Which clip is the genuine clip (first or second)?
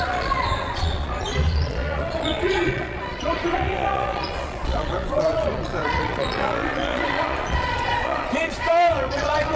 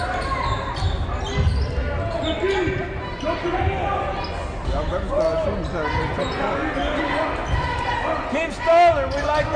second